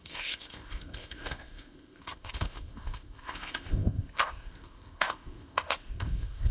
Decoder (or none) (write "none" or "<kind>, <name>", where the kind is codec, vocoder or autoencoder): codec, ZipCodec